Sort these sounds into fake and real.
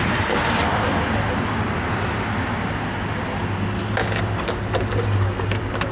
real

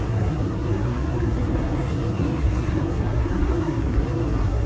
fake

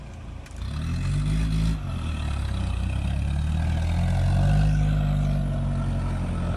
real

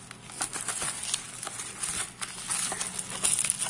real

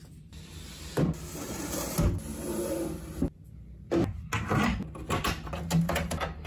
real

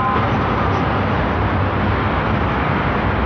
real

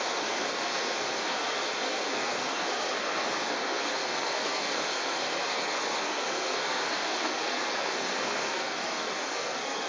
fake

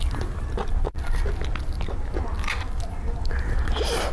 real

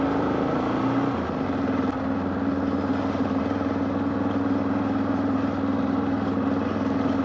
real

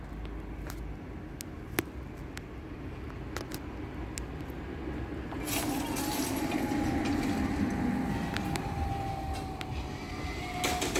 real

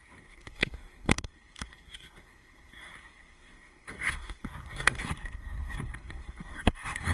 fake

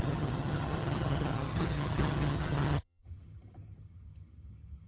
fake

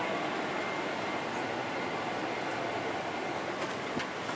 real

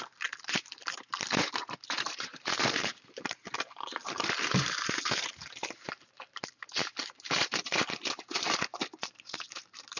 fake